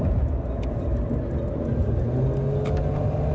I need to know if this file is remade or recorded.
recorded